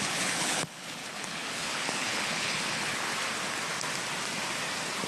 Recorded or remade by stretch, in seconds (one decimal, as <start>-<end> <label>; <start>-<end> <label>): 0.0-3.1 remade; 3.1-5.1 recorded

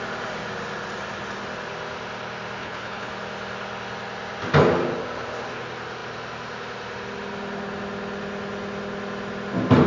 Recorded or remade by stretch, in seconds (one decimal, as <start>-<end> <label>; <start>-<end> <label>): 0.0-2.6 recorded; 2.6-3.1 remade; 3.1-9.9 recorded

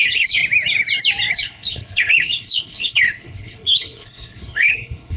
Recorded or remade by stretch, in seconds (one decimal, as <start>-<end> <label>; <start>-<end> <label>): 0.0-0.4 remade; 0.4-1.3 recorded; 1.3-5.2 remade

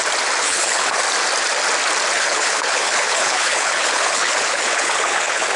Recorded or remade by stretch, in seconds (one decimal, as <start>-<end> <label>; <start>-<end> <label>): 0.0-0.4 recorded; 0.4-1.0 remade; 1.0-2.1 recorded; 2.1-5.6 remade

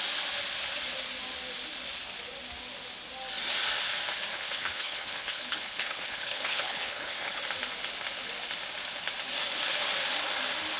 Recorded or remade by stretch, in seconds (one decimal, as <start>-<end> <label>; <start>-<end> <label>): 0.0-4.3 recorded; 4.3-7.4 remade; 7.4-10.8 recorded

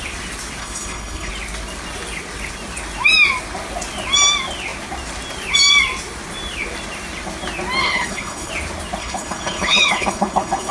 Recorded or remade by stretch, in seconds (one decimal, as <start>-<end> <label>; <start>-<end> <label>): 0.0-0.6 recorded; 0.6-1.3 remade; 1.3-7.8 recorded; 7.8-8.5 remade; 8.5-9.0 recorded; 9.0-10.7 remade